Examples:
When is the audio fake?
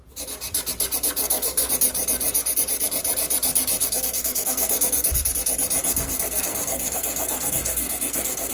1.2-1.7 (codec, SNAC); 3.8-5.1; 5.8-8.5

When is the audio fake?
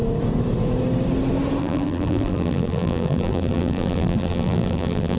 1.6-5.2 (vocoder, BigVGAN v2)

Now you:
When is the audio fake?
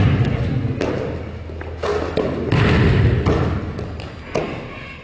none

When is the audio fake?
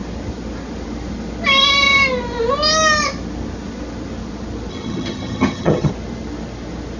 4.7-5.9 (vocoder, HiFi-GAN)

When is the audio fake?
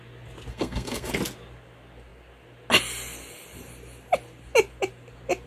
0.5-1.1 (codec, SNAC)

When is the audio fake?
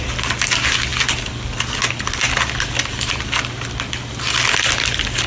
none